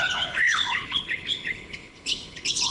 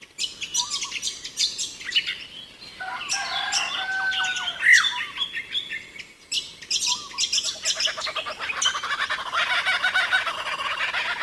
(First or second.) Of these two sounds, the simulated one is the first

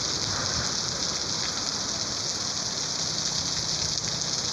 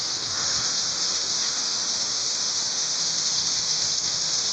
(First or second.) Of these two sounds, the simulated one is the second